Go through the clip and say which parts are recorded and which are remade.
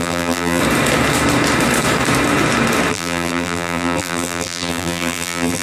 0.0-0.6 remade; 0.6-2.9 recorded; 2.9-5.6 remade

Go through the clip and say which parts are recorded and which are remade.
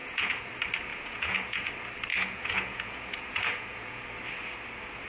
0.0-0.5 remade; 0.5-0.9 recorded; 0.9-1.7 remade; 1.7-2.1 recorded; 2.1-4.0 remade; 4.0-5.1 recorded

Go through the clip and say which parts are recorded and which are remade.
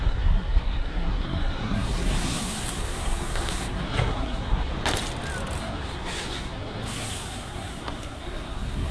0.0-4.7 remade; 4.7-5.6 recorded; 5.6-8.9 remade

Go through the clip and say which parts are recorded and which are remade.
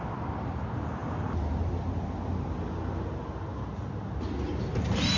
0.0-5.2 recorded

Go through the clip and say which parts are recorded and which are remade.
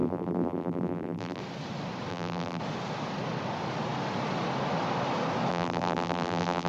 0.0-1.4 remade; 1.4-2.1 recorded; 2.1-2.6 remade; 2.6-5.5 recorded; 5.5-6.7 remade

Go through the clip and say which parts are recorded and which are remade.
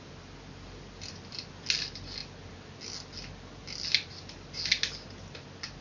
0.0-5.8 recorded